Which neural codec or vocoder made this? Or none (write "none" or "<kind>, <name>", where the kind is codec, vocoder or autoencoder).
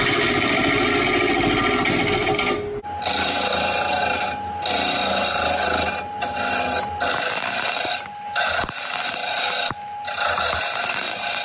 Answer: none